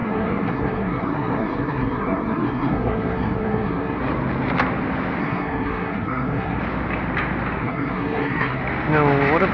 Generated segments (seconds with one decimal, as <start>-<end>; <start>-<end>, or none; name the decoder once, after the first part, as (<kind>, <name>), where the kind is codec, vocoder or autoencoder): 0.0-4.0 (codec, SNAC); 5.2-6.6; 7.6-8.6